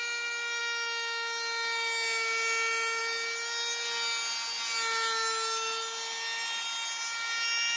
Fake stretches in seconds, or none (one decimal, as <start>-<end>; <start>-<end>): none